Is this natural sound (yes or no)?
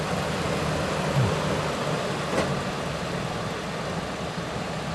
yes